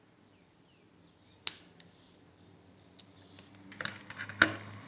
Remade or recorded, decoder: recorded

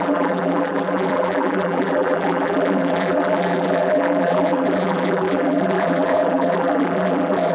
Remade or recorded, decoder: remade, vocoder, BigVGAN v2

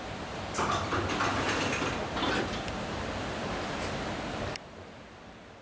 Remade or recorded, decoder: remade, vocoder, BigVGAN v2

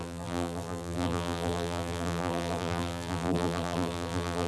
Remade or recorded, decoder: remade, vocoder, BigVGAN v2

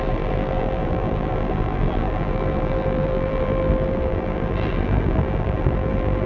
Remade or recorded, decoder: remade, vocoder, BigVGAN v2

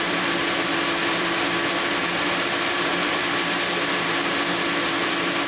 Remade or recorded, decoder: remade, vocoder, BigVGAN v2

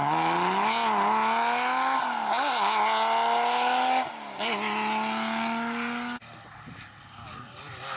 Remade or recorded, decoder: recorded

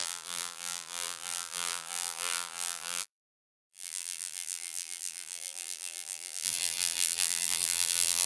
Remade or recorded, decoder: remade, vocoder, BigVGAN v2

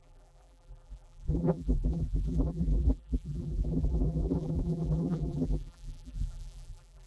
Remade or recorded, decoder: remade, vocoder, BigVGAN v2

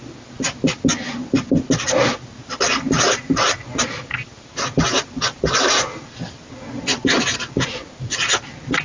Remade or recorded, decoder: recorded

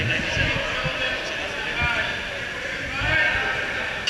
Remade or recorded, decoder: recorded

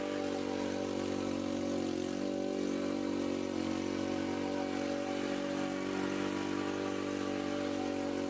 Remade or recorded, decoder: recorded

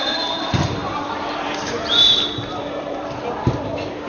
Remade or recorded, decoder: remade, vocoder, BigVGAN v2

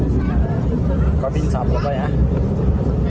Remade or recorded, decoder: remade, vocoder, BigVGAN v2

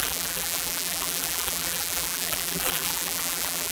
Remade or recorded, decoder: remade, vocoder, BigVGAN v2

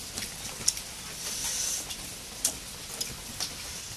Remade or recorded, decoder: recorded